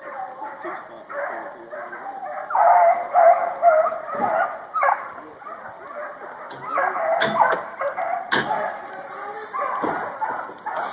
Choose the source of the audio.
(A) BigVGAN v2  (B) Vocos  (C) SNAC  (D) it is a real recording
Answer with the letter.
D